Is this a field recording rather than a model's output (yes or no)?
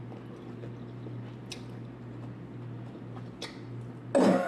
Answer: yes